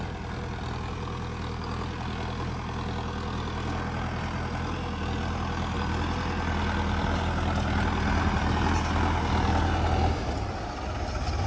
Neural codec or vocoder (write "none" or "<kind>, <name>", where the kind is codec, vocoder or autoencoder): none